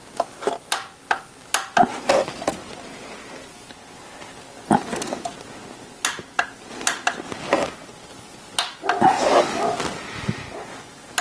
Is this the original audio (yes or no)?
yes